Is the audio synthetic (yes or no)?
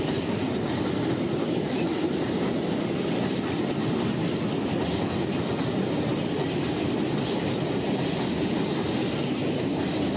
no